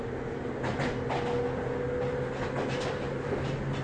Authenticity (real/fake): real